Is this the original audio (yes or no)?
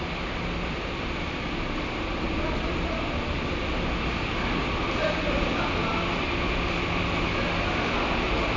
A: yes